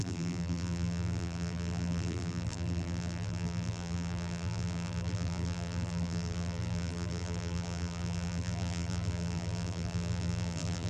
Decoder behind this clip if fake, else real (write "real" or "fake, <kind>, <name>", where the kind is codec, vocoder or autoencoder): fake, vocoder, BigVGAN v2